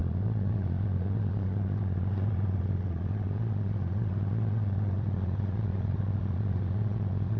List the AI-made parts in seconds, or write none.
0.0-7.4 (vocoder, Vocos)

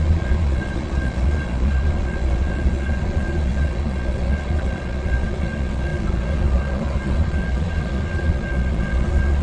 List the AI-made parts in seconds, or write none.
0.0-9.4 (vocoder, Vocos)

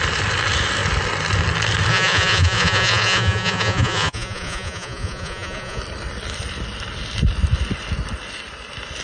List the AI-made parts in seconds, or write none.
1.9-5.8 (vocoder, Vocos)

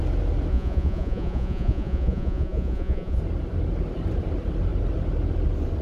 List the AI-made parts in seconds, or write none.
0.5-3.2 (vocoder, Vocos)

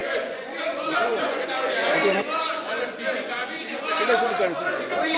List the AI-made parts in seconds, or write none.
0.0-5.2 (vocoder, Vocos)